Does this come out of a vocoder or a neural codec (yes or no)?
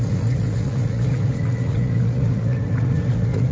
yes